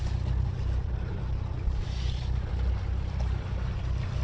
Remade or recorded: recorded